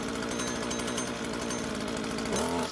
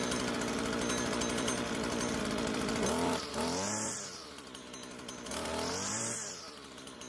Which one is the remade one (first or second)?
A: second